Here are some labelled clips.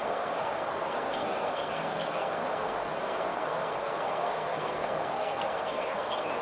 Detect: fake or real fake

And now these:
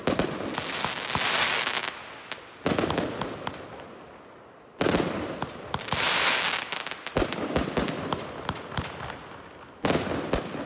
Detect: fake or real real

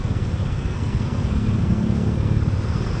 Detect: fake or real fake